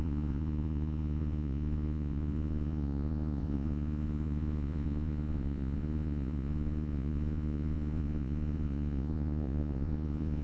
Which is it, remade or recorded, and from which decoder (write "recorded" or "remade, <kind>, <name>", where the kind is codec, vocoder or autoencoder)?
remade, vocoder, Vocos